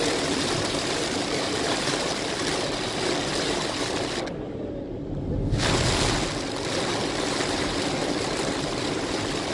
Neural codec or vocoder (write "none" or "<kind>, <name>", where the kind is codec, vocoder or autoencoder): none